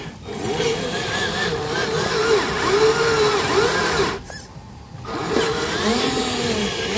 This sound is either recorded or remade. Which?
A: recorded